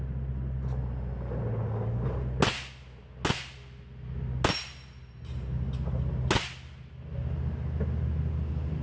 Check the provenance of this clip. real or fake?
real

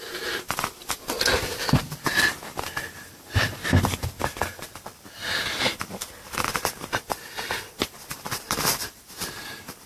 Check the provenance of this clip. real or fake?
fake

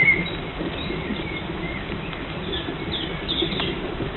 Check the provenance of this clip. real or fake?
real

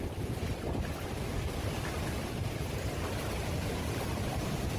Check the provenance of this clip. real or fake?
real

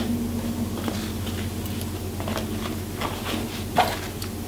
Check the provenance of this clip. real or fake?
real